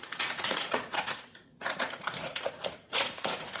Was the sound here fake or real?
fake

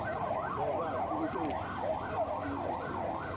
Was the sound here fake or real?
real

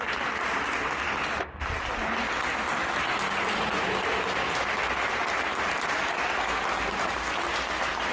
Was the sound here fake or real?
real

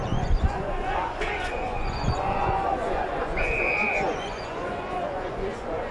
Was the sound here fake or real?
fake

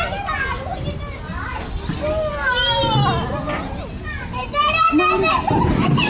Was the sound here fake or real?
real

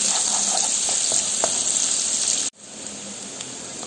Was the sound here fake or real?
real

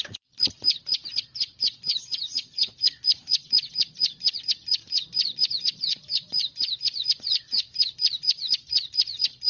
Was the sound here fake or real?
fake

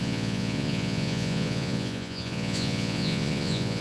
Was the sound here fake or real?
fake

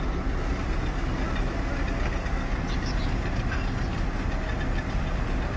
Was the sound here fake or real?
real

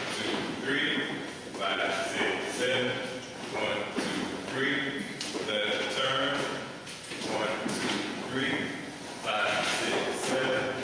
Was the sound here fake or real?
fake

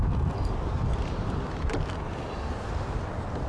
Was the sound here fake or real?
real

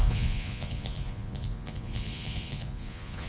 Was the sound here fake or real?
fake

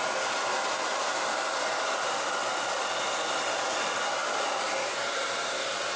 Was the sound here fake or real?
real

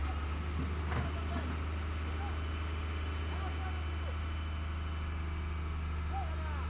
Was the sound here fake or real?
real